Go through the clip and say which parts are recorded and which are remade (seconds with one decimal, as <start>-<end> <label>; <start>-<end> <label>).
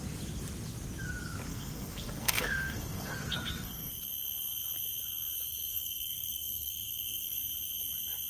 0.0-1.5 recorded; 1.5-3.9 remade; 3.9-5.7 recorded; 5.7-7.4 remade; 7.4-8.3 recorded